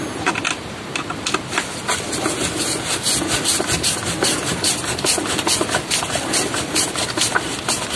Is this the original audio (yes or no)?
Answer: yes